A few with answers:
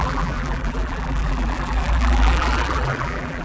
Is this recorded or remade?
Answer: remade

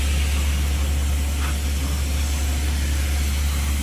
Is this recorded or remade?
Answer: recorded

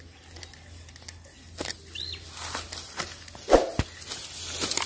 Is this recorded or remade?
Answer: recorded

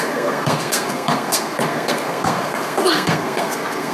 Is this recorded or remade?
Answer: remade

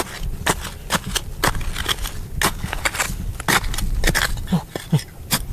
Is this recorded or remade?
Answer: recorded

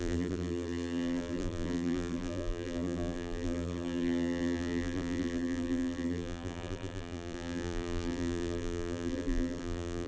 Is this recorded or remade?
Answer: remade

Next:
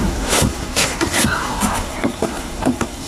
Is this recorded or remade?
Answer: remade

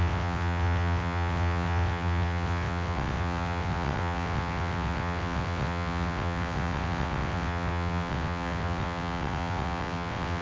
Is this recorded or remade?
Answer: remade